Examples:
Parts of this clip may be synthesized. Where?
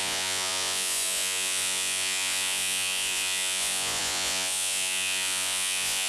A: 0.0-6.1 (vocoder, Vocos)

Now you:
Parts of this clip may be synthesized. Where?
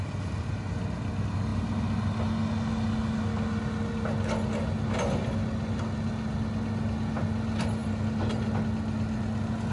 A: none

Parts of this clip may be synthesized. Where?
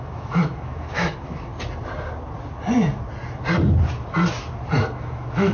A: 0.0-1.5 (autoencoder, DAC-VAE); 4.8-5.5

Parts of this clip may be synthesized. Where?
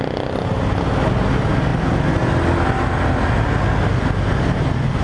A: none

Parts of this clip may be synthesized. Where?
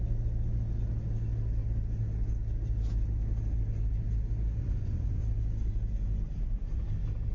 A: 4.6-5.2 (vocoder, Vocos)